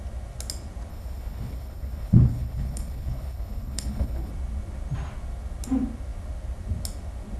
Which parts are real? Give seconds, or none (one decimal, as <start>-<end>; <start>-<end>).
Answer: 0.0-0.9; 4.3-7.4